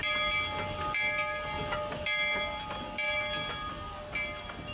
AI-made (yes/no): no